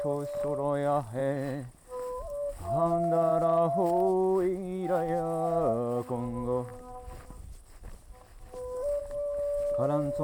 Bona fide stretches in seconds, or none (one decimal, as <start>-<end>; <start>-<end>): 0.0-10.2